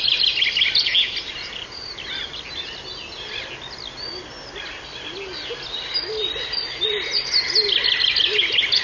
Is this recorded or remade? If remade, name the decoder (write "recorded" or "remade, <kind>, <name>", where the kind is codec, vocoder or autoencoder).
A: recorded